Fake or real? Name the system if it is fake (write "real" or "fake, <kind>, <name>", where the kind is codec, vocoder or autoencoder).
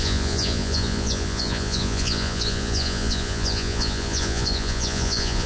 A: fake, vocoder, Vocos